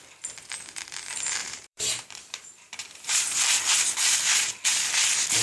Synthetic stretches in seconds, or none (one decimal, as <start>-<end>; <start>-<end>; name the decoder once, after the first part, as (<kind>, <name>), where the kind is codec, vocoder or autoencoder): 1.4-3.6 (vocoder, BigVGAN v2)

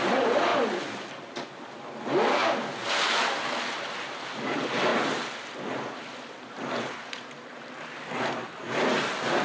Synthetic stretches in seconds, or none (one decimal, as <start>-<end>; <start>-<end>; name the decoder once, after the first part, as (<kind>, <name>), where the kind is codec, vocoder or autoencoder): 0.5-1.6 (vocoder, BigVGAN v2); 4.9-7.7

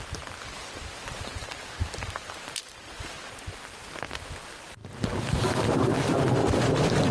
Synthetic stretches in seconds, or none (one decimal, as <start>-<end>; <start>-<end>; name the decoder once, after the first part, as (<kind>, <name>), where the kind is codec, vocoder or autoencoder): 1.4-3.1 (vocoder, BigVGAN v2)

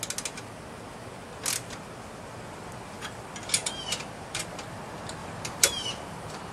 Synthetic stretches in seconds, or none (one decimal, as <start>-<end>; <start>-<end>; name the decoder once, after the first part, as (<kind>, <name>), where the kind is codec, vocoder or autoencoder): 3.6-4.4 (vocoder, BigVGAN v2); 5.2-6.5

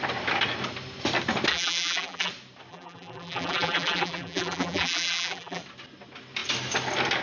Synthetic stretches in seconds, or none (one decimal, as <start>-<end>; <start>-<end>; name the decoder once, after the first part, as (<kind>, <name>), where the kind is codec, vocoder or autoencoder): 1.5-2.3 (vocoder, BigVGAN v2); 2.7-5.6

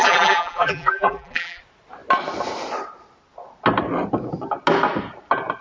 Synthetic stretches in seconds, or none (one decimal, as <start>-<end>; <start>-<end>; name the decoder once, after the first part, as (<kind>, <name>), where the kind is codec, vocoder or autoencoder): 0.0-1.6 (vocoder, BigVGAN v2)

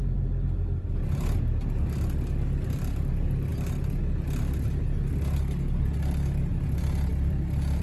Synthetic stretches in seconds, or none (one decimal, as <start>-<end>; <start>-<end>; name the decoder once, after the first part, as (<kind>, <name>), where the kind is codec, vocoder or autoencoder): 7.1-7.8 (vocoder, BigVGAN v2)

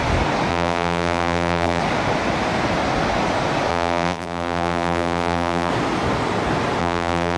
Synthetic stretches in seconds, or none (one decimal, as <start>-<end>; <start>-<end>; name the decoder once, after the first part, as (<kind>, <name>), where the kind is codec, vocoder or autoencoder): 0.5-1.8 (vocoder, BigVGAN v2); 3.7-5.7; 6.8-7.4